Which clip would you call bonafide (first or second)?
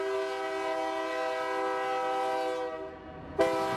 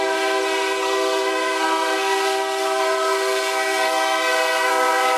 first